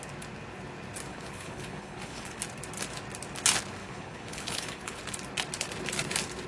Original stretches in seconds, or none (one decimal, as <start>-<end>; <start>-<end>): 0.0-1.1; 2.4-3.8; 5.0-6.5